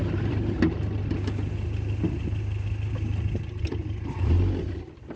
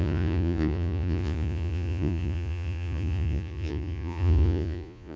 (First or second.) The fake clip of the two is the second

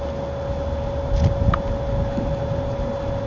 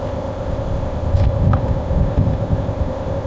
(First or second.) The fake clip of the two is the second